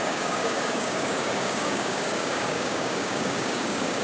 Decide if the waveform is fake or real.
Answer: fake